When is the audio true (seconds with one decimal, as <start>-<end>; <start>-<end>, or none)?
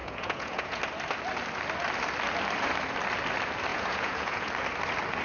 0.8-3.7; 4.5-5.2